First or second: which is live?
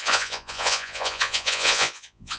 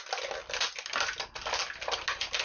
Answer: second